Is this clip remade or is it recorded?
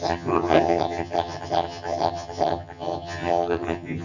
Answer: remade